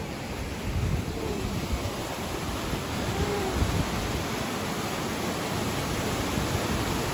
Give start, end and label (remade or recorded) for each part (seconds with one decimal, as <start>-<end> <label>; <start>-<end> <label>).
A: 0.0-0.9 recorded; 0.9-5.0 remade; 5.0-7.1 recorded